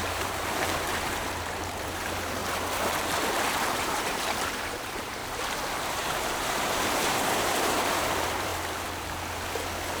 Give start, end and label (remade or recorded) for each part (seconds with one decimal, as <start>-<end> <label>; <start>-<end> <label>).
0.0-2.4 remade; 2.4-3.7 recorded; 3.7-5.2 remade; 5.2-6.5 recorded; 6.5-8.5 remade; 8.5-10.0 recorded